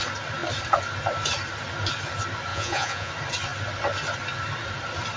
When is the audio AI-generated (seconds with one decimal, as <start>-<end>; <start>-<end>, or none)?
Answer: 2.5-3.1